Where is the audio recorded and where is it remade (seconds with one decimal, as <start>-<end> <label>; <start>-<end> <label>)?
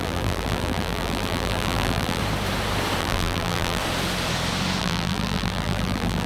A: 0.0-2.2 remade; 2.2-3.0 recorded; 3.0-3.8 remade; 3.8-4.8 recorded; 4.8-6.3 remade